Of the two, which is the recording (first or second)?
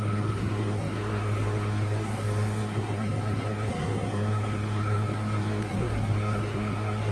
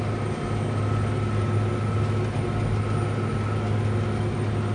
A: second